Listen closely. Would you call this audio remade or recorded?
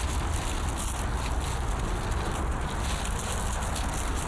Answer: recorded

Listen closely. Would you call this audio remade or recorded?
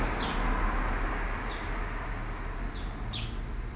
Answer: recorded